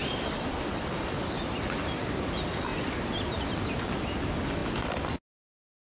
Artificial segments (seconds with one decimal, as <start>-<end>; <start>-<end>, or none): 2.7-3.7